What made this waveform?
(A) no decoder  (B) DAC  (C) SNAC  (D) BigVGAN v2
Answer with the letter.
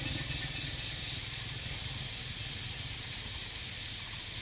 D